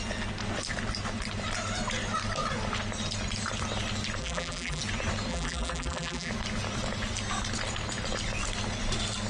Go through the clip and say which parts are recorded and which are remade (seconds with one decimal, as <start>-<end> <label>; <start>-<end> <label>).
0.0-4.2 recorded; 4.2-4.8 remade; 4.8-5.3 recorded; 5.3-6.3 remade; 6.3-9.3 recorded